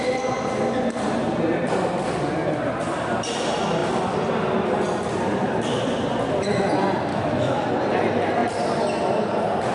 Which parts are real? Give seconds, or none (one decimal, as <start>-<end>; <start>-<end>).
0.0-7.1; 7.7-9.7